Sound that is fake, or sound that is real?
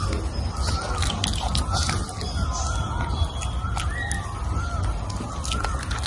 real